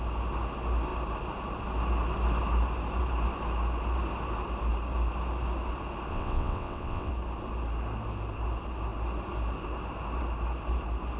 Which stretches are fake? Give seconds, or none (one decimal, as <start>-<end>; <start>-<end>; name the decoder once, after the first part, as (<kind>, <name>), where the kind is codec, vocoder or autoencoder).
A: 6.1-7.1 (vocoder, WaveNeXt)